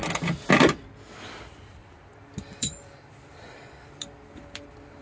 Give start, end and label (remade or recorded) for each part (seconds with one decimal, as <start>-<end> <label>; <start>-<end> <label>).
0.0-1.8 recorded; 1.8-5.0 remade